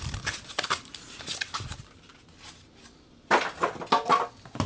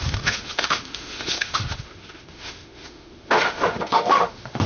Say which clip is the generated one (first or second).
second